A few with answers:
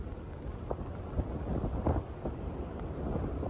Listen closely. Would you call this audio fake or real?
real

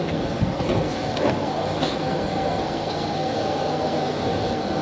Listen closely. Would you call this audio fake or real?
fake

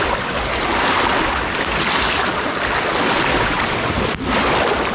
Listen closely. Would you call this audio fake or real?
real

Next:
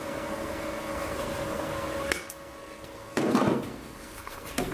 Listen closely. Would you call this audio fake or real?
fake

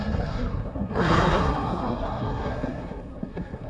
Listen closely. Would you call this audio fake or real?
fake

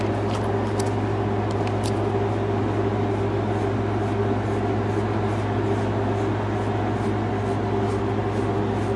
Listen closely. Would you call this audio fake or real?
real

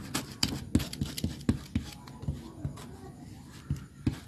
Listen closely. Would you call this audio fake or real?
real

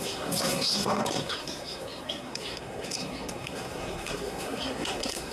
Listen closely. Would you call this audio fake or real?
fake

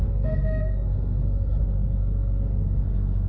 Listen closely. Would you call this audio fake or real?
fake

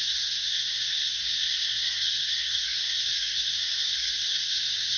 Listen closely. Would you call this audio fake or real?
fake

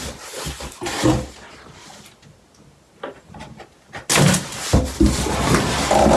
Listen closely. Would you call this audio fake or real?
real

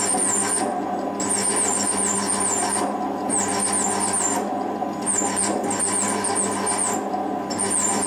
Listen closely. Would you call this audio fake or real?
real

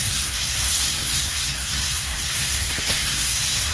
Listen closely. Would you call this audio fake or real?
fake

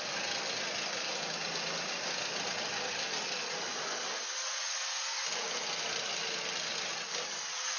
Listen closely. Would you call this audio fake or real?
real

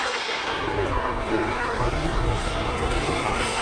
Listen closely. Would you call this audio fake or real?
fake